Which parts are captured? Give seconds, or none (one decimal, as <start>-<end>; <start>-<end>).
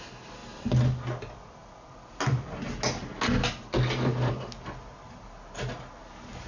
0.0-6.5